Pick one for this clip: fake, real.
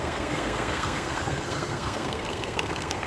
fake